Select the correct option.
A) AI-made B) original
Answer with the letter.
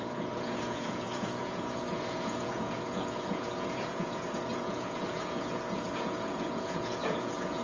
A